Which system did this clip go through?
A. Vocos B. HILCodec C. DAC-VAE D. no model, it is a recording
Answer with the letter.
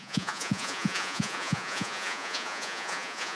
A